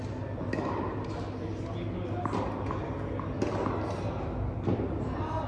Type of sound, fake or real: real